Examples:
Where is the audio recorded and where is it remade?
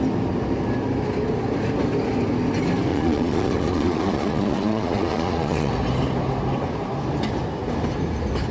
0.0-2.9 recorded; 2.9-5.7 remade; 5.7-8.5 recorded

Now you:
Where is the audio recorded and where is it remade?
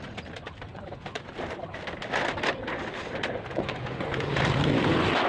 0.0-0.7 recorded; 0.7-1.3 remade; 1.3-3.5 recorded; 3.5-4.3 remade; 4.3-5.3 recorded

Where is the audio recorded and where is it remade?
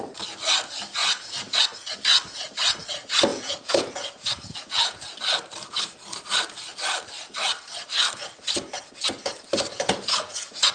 0.0-1.0 recorded; 1.0-1.6 remade; 1.6-3.3 recorded; 3.3-5.1 remade; 5.1-9.7 recorded; 9.7-10.7 remade